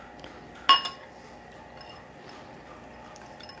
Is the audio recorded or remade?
recorded